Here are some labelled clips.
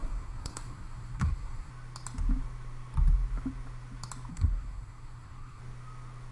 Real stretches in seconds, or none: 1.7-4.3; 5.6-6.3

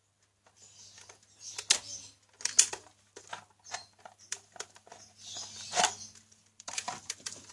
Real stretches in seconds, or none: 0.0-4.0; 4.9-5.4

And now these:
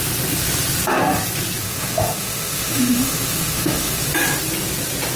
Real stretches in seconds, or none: 0.0-1.6; 4.0-5.2